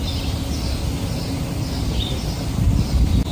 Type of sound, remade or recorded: recorded